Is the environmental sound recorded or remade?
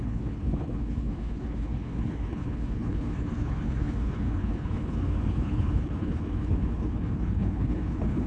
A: remade